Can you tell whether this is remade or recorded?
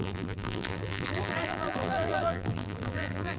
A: remade